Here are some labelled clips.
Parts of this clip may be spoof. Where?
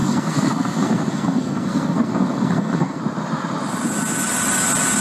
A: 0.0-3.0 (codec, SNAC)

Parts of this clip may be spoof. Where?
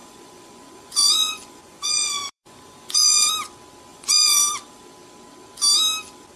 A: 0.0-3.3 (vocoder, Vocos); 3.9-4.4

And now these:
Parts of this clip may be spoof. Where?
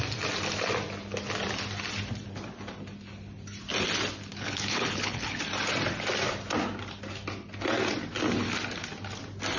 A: 4.3-5.4 (codec, HILCodec)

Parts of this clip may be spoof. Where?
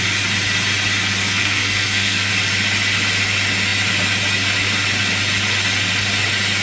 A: 1.2-2.3 (codec, SNAC)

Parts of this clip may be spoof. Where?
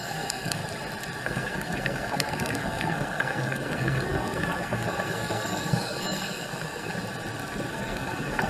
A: 0.0-0.6 (codec, SNAC); 1.2-6.9; 7.7-8.5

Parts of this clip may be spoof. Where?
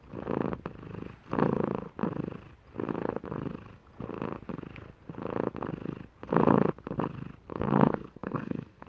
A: 7.5-8.9 (codec, SNAC)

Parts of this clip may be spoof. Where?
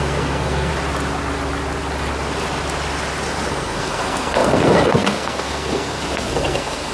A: 0.0-0.7 (codec, SNAC); 3.5-6.9